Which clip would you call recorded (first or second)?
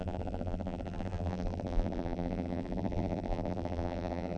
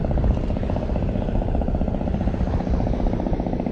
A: second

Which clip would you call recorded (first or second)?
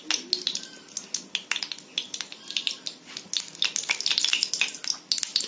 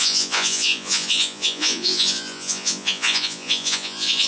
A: first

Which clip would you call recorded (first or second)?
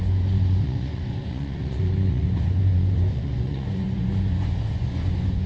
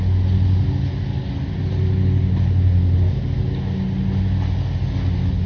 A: second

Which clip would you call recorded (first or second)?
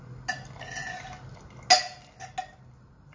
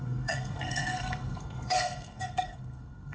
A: first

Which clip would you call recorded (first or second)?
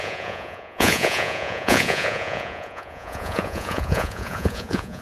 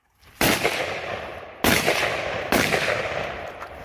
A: second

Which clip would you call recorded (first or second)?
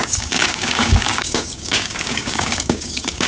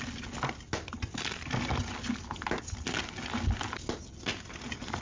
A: second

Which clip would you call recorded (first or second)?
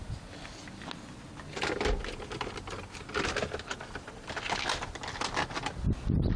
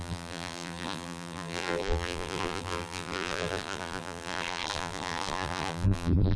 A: first